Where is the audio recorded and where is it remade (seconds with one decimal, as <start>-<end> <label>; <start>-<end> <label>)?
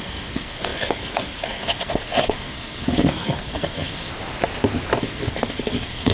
0.0-4.1 remade; 4.1-5.0 recorded; 5.0-6.1 remade